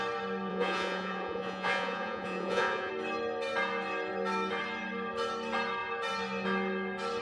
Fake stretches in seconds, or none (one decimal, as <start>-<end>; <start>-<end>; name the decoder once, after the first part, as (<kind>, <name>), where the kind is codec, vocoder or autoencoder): 0.5-2.9 (vocoder, Vocos)